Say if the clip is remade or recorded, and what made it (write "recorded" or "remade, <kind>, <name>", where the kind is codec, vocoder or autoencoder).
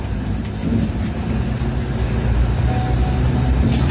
recorded